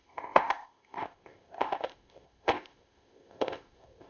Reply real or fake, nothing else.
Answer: fake